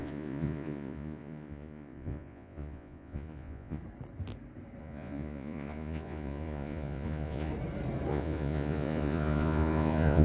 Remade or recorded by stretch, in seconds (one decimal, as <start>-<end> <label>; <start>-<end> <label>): 0.0-3.8 remade; 3.8-4.8 recorded; 4.8-7.5 remade; 7.5-8.1 recorded; 8.1-10.2 remade